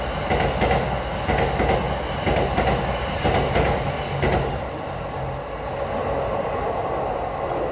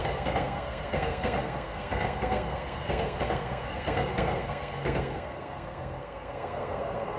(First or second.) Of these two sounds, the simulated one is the second